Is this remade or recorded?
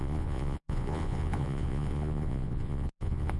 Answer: remade